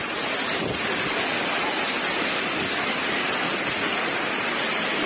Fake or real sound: real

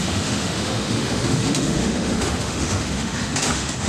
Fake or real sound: fake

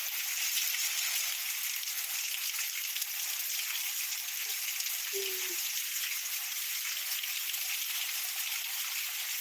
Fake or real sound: real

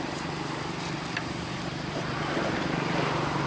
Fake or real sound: real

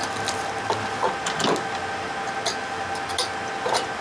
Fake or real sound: real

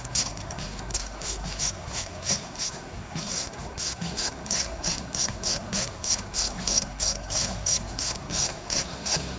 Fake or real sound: fake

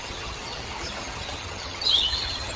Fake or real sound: fake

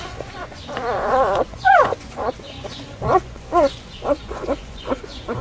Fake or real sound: fake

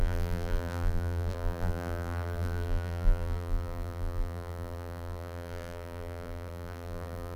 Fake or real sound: fake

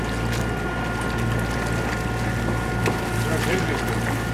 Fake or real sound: real